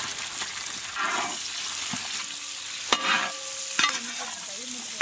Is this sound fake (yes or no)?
no